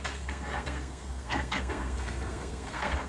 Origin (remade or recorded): remade